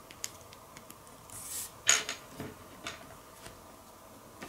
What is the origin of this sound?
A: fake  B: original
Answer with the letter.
B